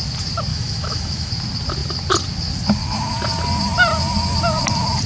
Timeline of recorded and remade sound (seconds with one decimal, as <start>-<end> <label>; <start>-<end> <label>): 0.0-0.5 recorded; 0.5-1.3 remade; 1.3-5.1 recorded